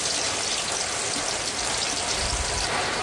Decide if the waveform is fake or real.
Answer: real